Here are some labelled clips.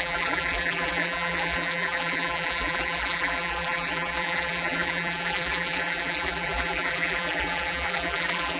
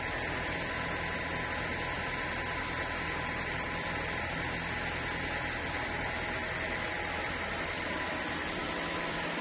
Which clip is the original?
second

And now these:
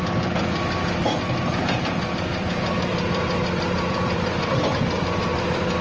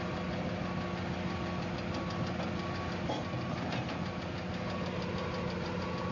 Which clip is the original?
second